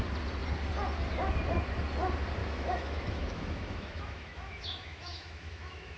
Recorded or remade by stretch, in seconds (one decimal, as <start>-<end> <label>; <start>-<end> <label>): 0.0-2.4 recorded; 2.4-6.0 remade